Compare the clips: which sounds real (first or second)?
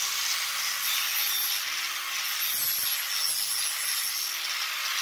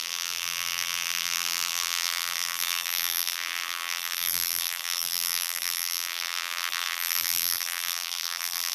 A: first